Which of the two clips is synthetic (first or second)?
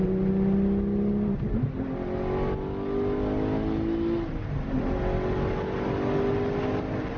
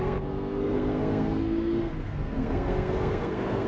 second